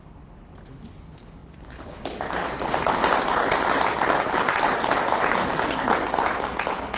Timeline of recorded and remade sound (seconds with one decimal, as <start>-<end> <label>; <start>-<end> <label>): 0.0-1.4 recorded; 1.4-5.0 remade; 5.0-7.0 recorded